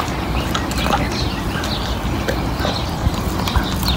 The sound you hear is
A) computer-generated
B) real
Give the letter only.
B